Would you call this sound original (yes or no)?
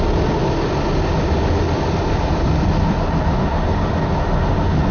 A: yes